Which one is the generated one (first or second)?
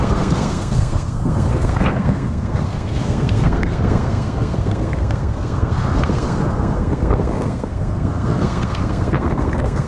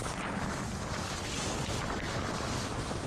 first